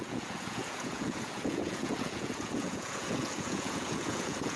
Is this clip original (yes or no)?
no